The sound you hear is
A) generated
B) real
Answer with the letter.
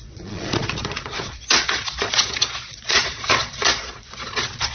A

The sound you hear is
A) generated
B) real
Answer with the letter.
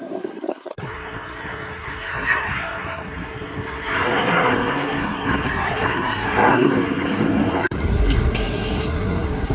A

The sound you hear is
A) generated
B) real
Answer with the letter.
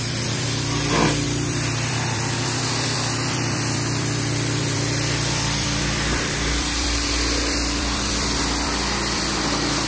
A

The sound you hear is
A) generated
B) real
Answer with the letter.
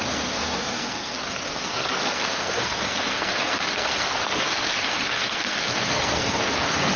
A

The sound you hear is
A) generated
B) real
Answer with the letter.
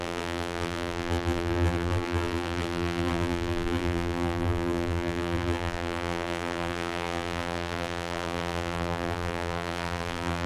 A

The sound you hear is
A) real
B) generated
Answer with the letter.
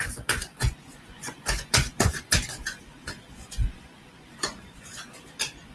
B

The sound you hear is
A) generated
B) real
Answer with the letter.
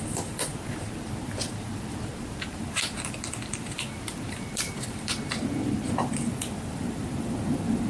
A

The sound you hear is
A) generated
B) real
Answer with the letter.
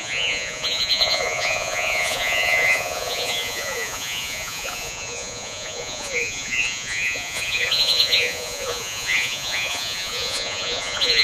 A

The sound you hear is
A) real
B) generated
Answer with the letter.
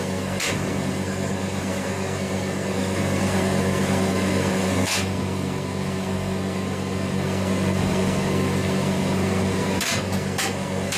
B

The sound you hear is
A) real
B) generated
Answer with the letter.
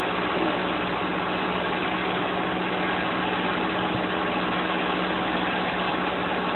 A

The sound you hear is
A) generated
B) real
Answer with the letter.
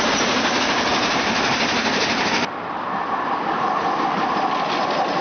B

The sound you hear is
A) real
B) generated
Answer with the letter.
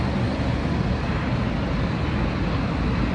A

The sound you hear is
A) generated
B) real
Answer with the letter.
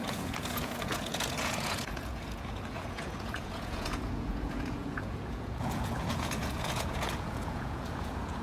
A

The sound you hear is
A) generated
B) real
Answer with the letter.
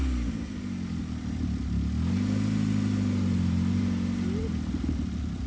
B